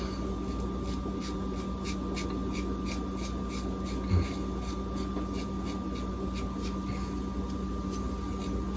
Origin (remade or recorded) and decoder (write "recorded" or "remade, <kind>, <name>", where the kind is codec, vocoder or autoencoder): recorded